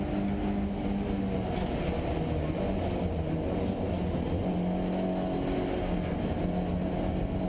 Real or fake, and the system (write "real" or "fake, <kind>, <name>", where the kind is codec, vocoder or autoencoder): real